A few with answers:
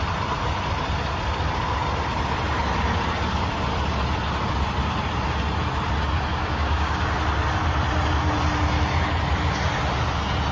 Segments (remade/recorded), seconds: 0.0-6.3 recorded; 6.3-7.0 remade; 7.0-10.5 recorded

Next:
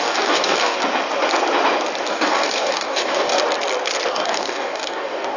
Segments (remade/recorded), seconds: 0.0-0.8 remade; 0.8-2.1 recorded; 2.1-3.4 remade; 3.4-4.1 recorded; 4.1-5.4 remade

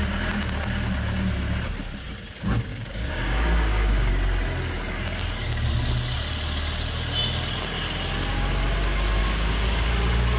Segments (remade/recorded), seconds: 0.0-2.7 recorded; 2.7-4.1 remade; 4.1-9.2 recorded; 9.2-9.9 remade; 9.9-10.4 recorded

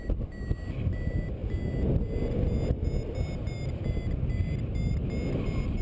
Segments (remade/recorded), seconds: 0.0-5.8 recorded

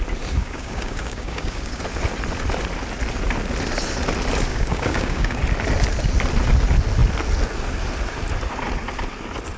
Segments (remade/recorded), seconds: 0.0-0.4 recorded; 0.4-1.8 remade; 1.8-4.5 recorded; 4.5-5.4 remade; 5.4-9.6 recorded

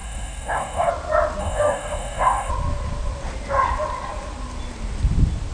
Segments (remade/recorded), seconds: 0.0-0.9 remade; 0.9-1.4 recorded; 1.4-2.5 remade; 2.5-5.5 recorded

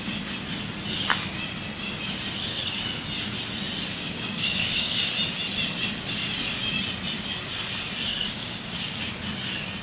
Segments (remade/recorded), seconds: 0.0-3.9 recorded; 3.9-5.0 remade; 5.0-8.1 recorded; 8.1-9.1 remade; 9.1-9.8 recorded

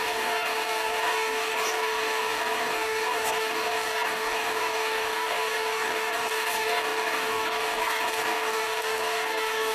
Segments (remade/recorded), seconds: 0.0-9.7 remade